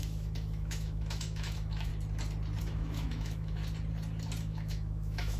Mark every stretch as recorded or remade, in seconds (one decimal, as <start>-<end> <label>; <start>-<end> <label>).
0.0-1.9 remade; 1.9-2.6 recorded; 2.6-3.6 remade; 3.6-4.4 recorded; 4.4-5.4 remade